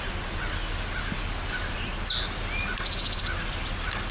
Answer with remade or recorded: recorded